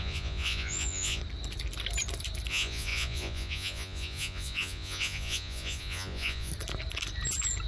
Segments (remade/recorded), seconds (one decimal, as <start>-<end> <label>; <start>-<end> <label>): 0.0-1.2 remade; 1.2-2.5 recorded; 2.5-6.5 remade; 6.5-7.7 recorded